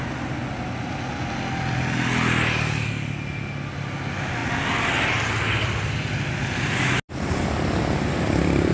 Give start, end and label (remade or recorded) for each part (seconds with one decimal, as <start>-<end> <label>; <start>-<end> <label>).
0.0-8.7 recorded